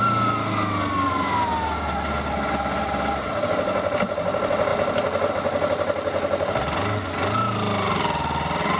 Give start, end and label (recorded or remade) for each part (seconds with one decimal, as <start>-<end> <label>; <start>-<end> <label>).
0.0-8.8 recorded